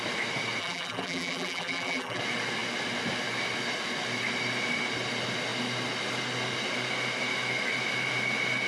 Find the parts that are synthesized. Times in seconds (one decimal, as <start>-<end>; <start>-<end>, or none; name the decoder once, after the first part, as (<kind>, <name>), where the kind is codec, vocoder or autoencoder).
0.6-2.2 (vocoder, BigVGAN v2)